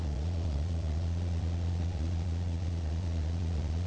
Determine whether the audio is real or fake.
fake